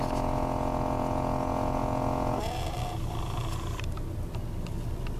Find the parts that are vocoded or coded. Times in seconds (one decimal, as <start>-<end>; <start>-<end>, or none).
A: none